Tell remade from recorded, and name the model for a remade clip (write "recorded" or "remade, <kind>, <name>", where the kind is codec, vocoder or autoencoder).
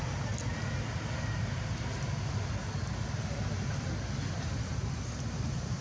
recorded